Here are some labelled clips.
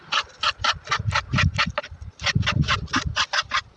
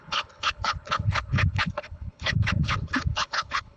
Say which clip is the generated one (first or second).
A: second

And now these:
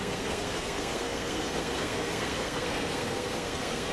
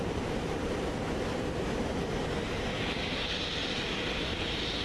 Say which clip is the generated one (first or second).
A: first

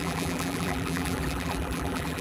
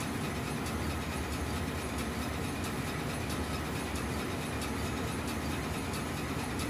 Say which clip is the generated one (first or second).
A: first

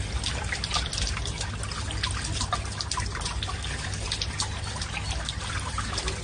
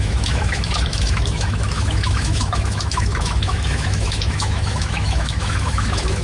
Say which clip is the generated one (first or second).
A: second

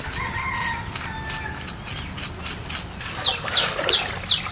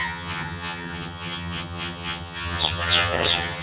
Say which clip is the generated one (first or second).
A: second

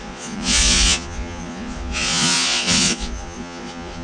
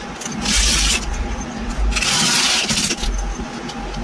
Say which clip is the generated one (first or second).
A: first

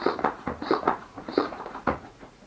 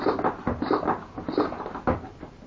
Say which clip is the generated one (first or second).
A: first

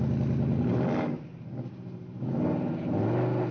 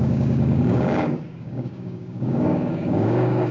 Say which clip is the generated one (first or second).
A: second